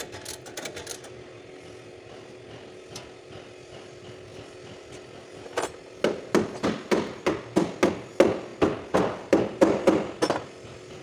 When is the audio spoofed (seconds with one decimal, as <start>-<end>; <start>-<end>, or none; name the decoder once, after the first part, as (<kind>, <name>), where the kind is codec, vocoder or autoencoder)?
8.5-11.0 (vocoder, BigVGAN v2)